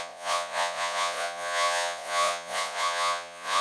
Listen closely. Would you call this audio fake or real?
fake